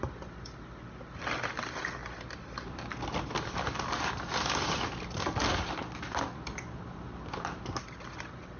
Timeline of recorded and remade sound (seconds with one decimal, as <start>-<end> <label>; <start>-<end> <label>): 0.0-8.6 recorded